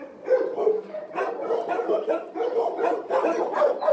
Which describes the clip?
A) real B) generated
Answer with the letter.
B